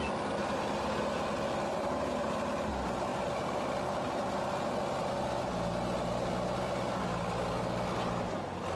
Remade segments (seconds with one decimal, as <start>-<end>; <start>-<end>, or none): none